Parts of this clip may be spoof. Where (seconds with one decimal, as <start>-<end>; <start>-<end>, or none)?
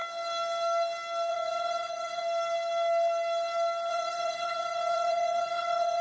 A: 1.3-2.2; 3.9-6.0